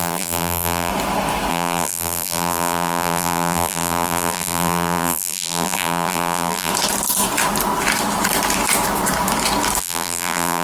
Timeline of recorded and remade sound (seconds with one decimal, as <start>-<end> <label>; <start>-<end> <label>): 0.0-0.9 remade; 0.9-1.5 recorded; 1.5-6.7 remade; 6.7-9.8 recorded; 9.8-10.6 remade